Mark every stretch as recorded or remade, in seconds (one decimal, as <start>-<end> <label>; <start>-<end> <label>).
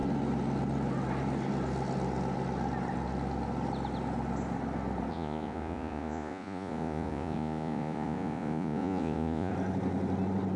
0.0-5.1 recorded; 5.1-9.5 remade; 9.5-10.6 recorded